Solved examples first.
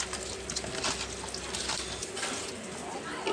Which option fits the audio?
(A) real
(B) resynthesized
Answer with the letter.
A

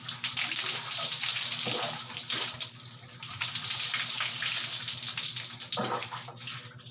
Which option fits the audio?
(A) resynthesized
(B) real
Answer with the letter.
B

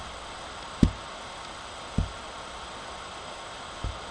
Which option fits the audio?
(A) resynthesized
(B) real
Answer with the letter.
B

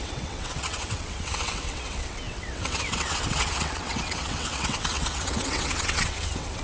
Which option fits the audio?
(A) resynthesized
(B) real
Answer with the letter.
A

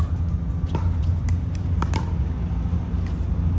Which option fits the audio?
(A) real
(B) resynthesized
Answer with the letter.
A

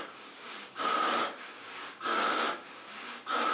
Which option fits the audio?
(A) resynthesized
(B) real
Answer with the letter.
A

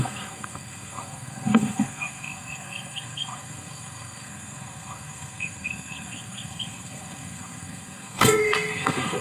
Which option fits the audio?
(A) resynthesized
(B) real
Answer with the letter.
A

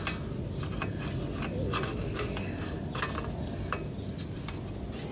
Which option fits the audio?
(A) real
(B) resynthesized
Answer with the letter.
A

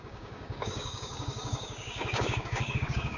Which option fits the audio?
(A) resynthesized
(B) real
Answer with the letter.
A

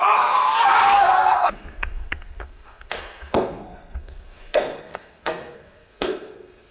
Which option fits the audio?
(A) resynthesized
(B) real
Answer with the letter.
A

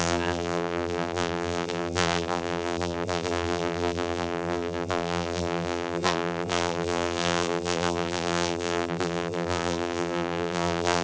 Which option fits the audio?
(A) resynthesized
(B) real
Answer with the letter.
A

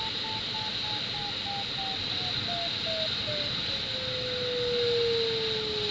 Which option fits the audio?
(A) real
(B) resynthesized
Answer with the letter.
A